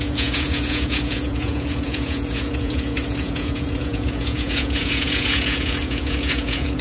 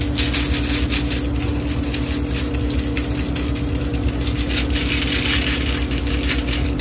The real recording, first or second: second